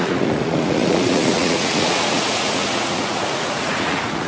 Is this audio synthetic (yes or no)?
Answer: yes